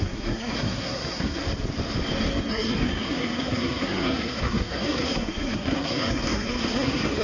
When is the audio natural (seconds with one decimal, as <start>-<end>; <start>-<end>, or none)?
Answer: 1.4-2.5